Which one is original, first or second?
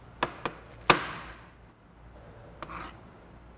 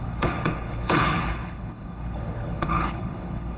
first